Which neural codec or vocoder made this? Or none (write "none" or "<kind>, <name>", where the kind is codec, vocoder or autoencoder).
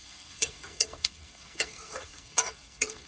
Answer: codec, SNAC